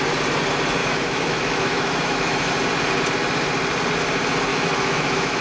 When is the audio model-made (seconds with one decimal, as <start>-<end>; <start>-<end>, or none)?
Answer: 0.8-2.5; 4.5-5.4

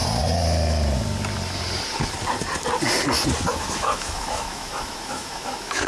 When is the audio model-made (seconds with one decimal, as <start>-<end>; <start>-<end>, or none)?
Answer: 3.5-5.9

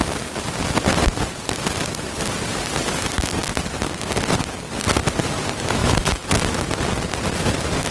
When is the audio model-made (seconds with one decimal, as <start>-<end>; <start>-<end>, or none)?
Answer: 5.8-6.7

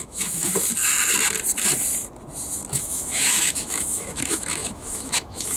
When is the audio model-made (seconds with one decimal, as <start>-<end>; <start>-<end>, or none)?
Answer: 0.0-0.5; 2.7-5.6

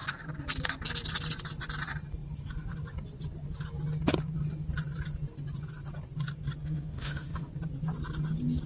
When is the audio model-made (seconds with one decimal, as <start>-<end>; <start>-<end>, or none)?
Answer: 6.6-7.5